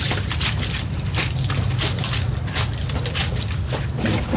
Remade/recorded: recorded